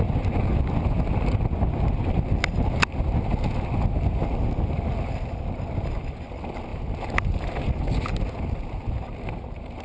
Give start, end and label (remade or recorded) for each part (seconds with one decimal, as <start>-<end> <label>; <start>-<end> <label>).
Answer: 0.0-9.8 recorded